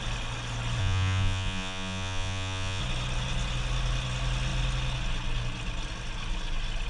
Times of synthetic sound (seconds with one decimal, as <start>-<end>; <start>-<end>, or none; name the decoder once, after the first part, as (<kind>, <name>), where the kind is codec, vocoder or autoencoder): 0.8-2.8 (vocoder, Vocos)